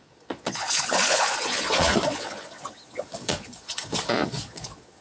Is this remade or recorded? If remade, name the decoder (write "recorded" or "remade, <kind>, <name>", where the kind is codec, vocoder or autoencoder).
remade, vocoder, Vocos